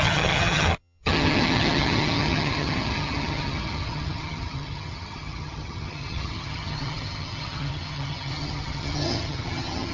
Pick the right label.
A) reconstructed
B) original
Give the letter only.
A